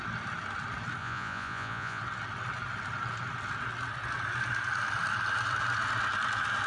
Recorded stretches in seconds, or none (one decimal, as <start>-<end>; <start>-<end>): 0.0-1.0; 2.0-6.7